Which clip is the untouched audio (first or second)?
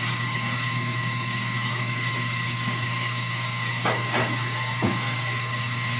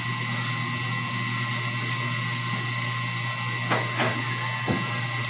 second